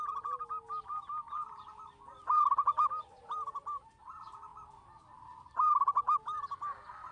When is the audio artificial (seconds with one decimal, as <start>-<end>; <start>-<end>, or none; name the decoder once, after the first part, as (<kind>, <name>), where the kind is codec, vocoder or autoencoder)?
none